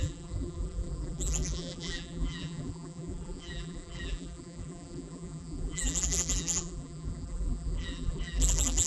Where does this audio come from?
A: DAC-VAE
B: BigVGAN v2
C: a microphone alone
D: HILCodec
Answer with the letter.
B